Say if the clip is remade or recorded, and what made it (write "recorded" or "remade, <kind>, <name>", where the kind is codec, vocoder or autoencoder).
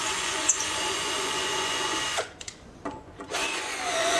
remade, vocoder, Vocos